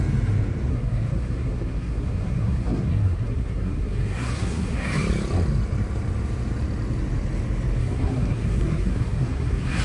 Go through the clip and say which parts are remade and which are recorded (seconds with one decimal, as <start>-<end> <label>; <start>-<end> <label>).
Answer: 0.0-0.7 recorded; 0.7-5.0 remade; 5.0-7.8 recorded; 7.8-9.8 remade